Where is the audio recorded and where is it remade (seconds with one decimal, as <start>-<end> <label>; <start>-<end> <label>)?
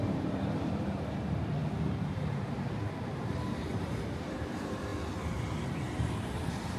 0.0-4.9 remade; 4.9-5.5 recorded; 5.5-6.8 remade